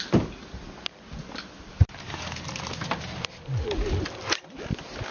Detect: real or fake real